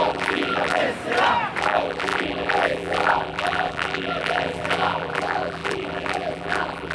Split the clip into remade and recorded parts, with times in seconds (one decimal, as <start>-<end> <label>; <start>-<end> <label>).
0.0-0.8 remade; 0.8-1.6 recorded; 1.6-6.9 remade